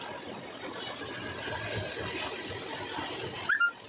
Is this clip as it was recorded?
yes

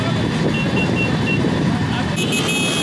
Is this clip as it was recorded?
yes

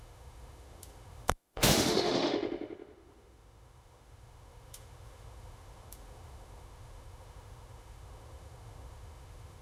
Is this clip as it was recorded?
no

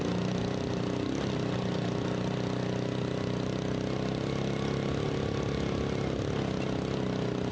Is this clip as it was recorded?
yes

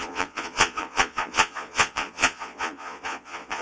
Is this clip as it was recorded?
no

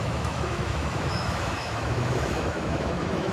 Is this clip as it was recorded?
no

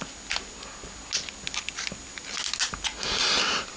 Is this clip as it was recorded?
yes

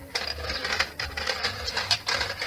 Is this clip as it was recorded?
no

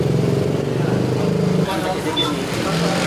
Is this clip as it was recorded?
yes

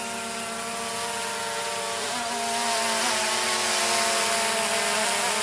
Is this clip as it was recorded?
yes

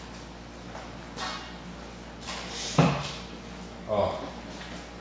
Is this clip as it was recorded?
yes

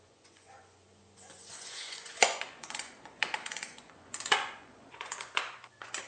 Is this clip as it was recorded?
no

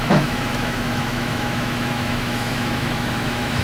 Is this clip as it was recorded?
no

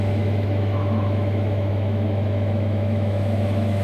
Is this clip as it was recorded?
no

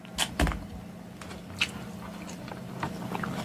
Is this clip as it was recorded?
yes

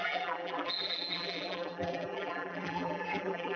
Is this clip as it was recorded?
no